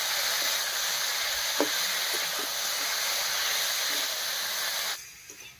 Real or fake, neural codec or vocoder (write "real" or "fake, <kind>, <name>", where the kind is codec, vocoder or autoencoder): real